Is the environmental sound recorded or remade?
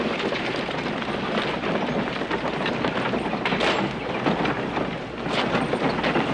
recorded